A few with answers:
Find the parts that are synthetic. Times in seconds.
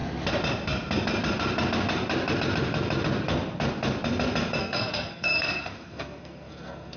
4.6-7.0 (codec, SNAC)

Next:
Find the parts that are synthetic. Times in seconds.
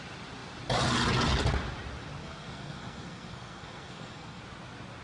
2.2-4.4 (codec, SNAC)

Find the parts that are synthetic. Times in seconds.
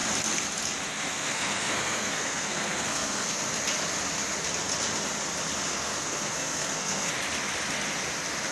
1.1-3.4 (codec, SNAC); 5.7-7.1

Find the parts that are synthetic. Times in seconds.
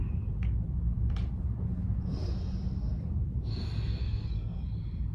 4.0-4.6 (codec, SNAC)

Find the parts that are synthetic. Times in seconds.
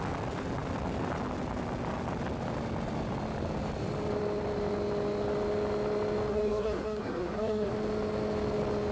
6.3-7.7 (codec, SNAC)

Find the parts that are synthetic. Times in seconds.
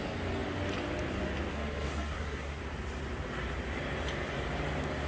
1.5-2.6 (codec, SNAC)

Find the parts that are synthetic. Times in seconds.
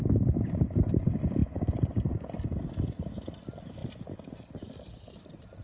none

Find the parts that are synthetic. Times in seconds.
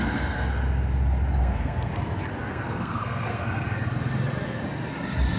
0.0-0.5 (codec, SNAC); 1.4-1.9; 2.5-3.4